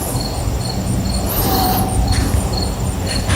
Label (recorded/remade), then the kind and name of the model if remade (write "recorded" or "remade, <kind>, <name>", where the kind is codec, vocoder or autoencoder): recorded